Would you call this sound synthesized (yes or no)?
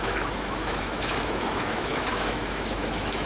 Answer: yes